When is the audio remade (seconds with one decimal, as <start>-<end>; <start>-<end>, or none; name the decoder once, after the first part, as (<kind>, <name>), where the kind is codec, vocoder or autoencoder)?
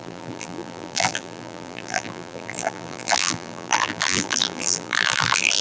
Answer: 0.0-5.6 (vocoder, BigVGAN v2)